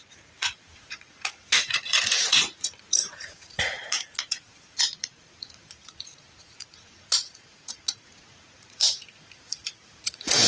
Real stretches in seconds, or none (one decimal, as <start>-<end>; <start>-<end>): none